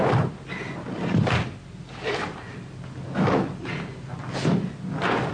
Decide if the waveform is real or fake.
real